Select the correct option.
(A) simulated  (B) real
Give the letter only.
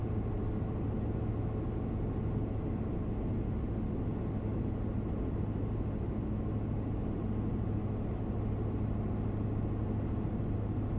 B